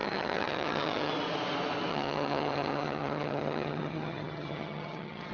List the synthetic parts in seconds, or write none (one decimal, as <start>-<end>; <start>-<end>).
0.0-1.1; 1.9-5.3